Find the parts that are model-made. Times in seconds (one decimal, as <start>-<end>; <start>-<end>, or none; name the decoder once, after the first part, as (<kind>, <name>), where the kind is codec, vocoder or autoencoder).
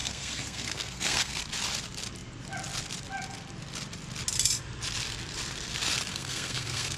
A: 0.0-1.4 (codec, SNAC); 6.1-7.0